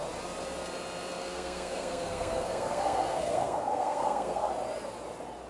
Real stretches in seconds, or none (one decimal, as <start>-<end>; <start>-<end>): 0.0-1.2; 4.5-5.5